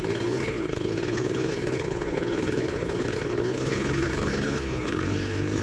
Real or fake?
fake